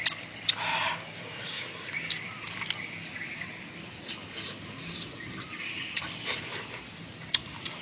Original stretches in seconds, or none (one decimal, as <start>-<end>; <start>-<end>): 0.0-7.8

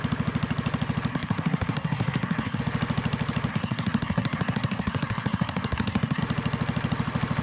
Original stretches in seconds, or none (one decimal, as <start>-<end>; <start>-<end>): 0.0-1.1; 2.6-3.5; 6.2-7.4

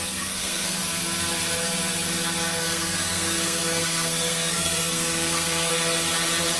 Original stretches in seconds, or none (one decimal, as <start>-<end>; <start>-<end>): 0.8-2.6; 5.7-6.6